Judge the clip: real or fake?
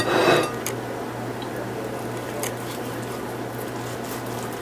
real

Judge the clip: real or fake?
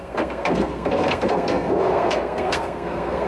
fake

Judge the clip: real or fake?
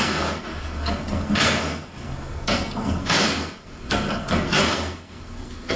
fake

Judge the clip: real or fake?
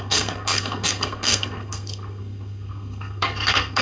fake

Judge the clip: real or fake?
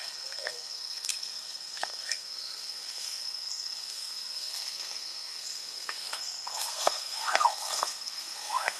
fake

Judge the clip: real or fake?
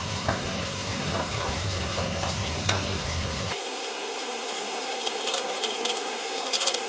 fake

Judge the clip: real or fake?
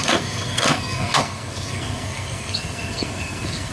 fake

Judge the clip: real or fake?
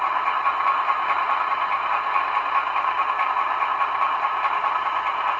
real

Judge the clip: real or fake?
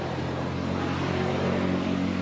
real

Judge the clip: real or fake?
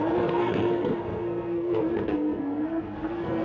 fake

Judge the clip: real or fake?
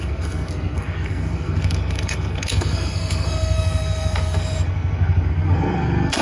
fake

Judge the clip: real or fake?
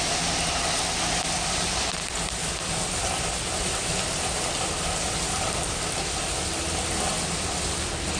real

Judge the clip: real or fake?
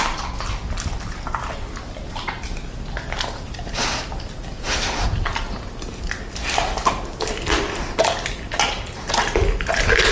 real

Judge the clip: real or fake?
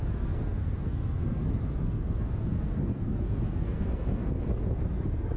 fake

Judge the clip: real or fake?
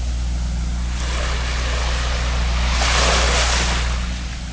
real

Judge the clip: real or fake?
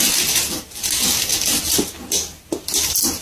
real